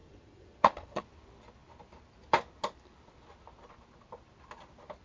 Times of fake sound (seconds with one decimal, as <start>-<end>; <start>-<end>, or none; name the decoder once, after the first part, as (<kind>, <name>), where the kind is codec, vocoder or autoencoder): 0.0-1.0 (vocoder, Vocos)